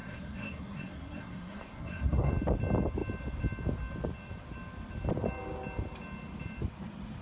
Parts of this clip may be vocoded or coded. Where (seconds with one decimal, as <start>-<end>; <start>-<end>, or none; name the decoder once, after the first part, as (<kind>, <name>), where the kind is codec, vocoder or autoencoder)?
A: 0.0-2.3 (codec, SNAC)